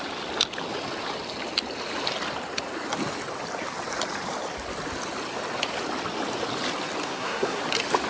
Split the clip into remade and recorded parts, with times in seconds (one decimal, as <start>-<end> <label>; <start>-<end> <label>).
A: 0.0-7.0 recorded; 7.0-7.6 remade; 7.6-8.1 recorded